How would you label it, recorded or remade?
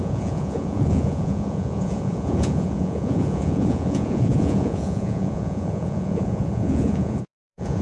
remade